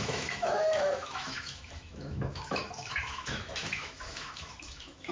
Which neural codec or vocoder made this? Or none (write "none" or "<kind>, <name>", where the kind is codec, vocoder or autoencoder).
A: autoencoder, DAC-VAE